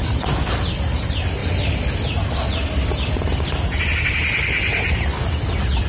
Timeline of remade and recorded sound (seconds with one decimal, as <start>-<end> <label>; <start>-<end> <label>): 0.0-5.9 recorded